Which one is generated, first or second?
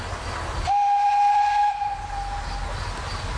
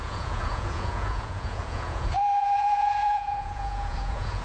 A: second